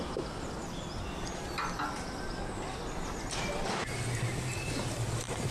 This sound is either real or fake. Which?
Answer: real